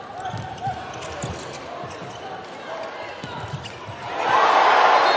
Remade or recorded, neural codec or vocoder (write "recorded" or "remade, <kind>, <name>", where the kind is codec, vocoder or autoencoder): recorded